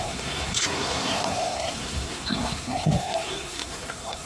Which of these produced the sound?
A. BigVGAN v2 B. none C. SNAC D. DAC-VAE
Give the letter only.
C